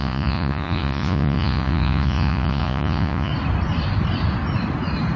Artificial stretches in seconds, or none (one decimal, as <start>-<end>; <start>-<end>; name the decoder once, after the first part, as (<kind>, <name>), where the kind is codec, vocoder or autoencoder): 0.0-3.3 (vocoder, Vocos)